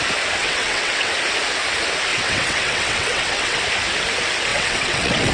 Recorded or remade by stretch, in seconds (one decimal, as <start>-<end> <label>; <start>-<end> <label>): 0.0-0.4 recorded; 0.4-1.1 remade; 1.1-2.1 recorded; 2.1-3.6 remade; 3.6-4.5 recorded; 4.5-5.3 remade